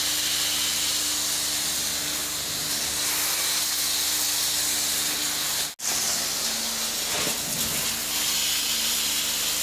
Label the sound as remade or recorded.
recorded